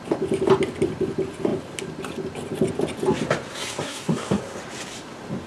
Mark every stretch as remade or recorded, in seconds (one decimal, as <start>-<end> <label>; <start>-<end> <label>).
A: 0.0-3.5 recorded; 3.5-4.4 remade; 4.4-5.5 recorded

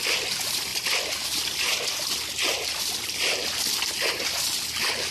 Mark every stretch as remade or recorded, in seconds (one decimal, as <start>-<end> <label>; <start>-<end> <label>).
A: 0.0-5.1 recorded

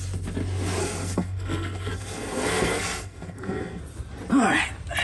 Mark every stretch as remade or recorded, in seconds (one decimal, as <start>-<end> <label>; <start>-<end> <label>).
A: 0.0-0.8 recorded; 0.8-3.8 remade; 3.8-5.0 recorded

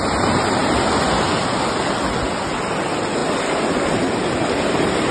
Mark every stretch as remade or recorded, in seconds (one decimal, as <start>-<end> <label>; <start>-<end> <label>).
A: 0.0-5.1 recorded

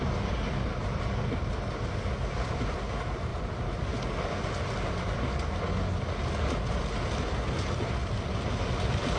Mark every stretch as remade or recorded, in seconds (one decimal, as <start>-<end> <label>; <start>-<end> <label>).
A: 0.0-9.2 recorded